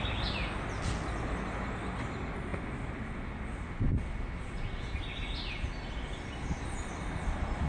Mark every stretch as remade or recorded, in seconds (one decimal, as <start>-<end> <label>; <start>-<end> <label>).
0.0-7.7 recorded